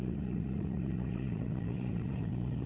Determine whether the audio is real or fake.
fake